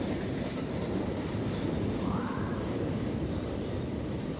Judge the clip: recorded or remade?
remade